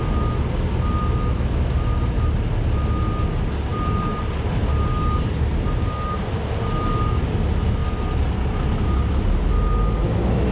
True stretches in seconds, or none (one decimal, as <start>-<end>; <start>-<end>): 0.0-10.5